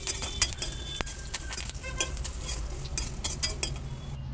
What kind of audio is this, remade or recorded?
recorded